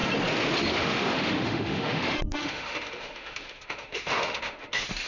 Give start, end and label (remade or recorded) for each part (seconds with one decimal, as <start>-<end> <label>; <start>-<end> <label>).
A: 0.0-0.7 recorded; 0.7-5.1 remade